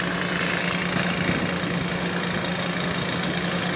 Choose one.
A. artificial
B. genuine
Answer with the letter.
B